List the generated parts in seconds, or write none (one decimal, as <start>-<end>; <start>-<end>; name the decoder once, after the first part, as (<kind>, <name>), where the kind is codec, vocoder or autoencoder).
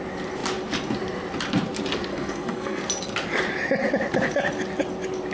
2.1-2.8 (codec, SNAC)